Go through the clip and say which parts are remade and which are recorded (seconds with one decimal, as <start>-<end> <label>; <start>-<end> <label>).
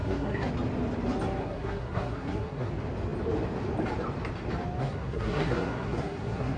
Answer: 0.0-0.5 remade; 0.5-1.4 recorded; 1.4-2.7 remade; 2.7-4.8 recorded; 4.8-6.6 remade